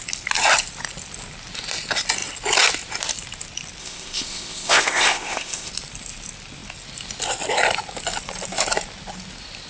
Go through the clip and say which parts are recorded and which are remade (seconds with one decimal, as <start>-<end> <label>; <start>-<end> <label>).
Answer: 0.0-3.8 recorded; 3.8-5.7 remade; 5.7-9.7 recorded